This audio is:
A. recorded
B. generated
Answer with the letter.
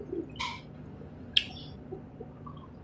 A